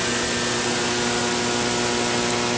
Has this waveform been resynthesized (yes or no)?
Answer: no